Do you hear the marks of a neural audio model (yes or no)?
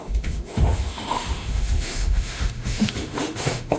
yes